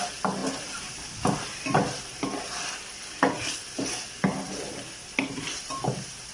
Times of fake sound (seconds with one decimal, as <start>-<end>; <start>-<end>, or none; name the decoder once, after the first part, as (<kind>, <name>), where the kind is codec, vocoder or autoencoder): none